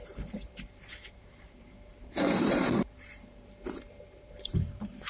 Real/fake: fake